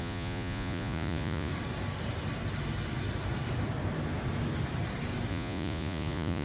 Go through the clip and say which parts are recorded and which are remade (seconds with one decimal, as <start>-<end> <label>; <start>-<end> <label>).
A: 0.0-1.5 remade; 1.5-5.3 recorded; 5.3-6.4 remade